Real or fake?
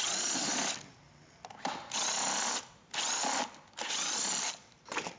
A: real